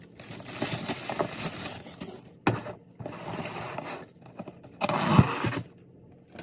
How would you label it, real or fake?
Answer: real